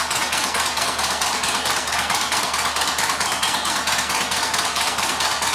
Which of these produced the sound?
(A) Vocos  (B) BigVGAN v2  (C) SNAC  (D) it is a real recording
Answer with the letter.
C